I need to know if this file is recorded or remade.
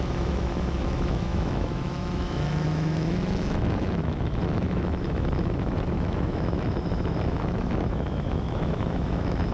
remade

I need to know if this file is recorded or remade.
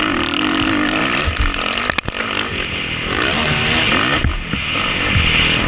recorded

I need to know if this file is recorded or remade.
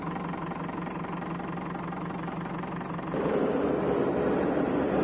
recorded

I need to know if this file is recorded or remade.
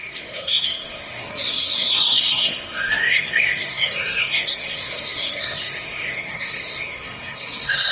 remade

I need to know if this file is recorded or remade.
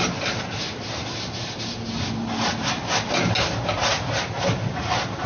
recorded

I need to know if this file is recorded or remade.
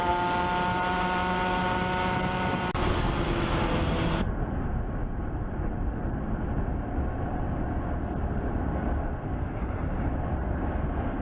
recorded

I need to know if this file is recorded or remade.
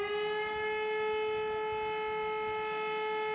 recorded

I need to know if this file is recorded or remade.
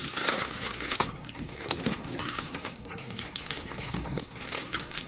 remade